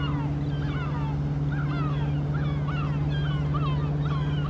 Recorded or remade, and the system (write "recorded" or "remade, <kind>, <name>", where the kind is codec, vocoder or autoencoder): recorded